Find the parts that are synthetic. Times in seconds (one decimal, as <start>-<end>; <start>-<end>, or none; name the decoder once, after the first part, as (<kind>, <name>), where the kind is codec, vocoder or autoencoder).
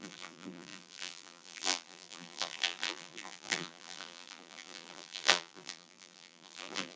0.0-7.0 (vocoder, BigVGAN v2)